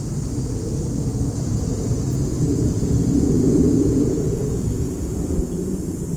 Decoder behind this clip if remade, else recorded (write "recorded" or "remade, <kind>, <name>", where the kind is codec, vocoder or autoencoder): remade, vocoder, Vocos